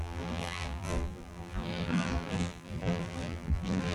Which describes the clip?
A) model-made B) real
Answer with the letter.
A